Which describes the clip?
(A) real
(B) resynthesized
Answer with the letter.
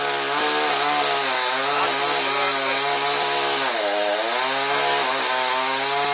A